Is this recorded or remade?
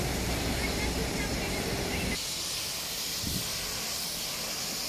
recorded